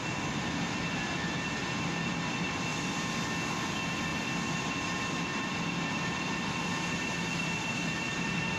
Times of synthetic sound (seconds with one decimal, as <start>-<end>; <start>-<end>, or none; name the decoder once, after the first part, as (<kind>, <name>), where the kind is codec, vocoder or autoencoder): 0.0-8.6 (vocoder, BigVGAN v2)